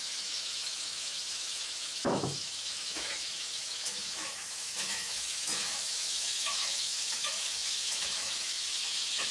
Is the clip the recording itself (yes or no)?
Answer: no